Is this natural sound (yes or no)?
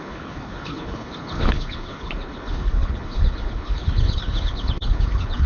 no